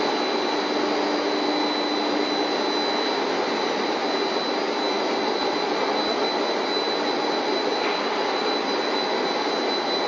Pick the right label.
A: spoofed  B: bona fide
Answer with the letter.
B